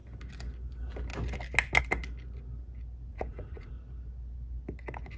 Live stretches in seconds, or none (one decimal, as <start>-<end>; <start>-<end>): 0.0-3.1; 3.7-5.2